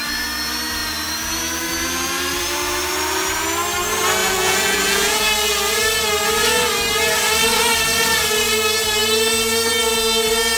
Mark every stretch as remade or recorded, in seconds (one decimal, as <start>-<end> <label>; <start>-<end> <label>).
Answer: 0.0-4.2 recorded; 4.2-5.3 remade; 5.3-10.6 recorded